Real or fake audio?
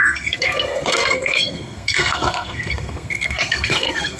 fake